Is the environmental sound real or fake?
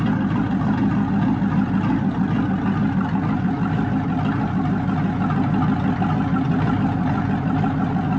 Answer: real